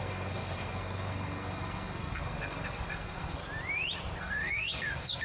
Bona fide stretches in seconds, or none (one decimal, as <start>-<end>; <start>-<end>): 3.4-4.2